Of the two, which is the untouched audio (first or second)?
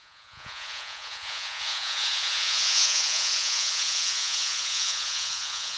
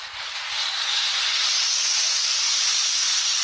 second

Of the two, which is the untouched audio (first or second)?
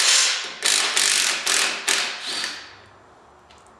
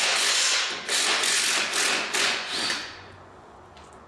first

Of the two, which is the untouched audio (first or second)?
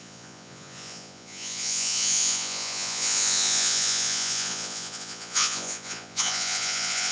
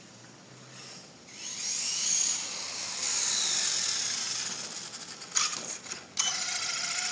second